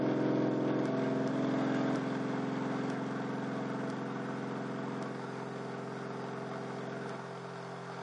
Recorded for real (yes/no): yes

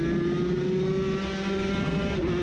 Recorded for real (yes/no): yes